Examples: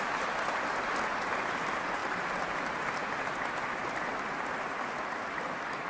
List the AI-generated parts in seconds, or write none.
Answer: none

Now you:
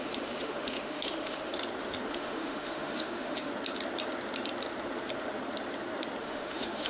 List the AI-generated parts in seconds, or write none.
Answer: 0.0-1.5; 2.1-3.5; 6.2-6.9

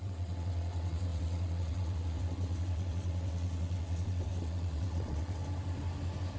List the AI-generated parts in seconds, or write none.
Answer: 0.0-5.4

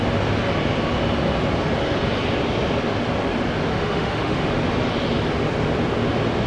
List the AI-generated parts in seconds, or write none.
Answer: 3.7-4.5

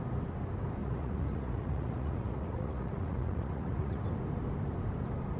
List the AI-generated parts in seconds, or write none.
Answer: 0.8-4.0

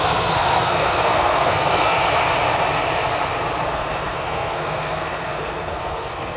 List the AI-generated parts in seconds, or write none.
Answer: 0.0-2.0; 3.7-6.4

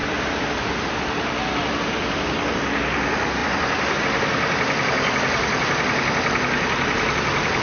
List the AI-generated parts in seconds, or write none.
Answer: 0.0-0.6